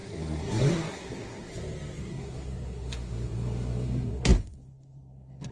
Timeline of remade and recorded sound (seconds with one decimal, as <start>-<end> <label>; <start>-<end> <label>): 0.0-1.5 remade; 1.5-2.0 recorded; 2.0-5.5 remade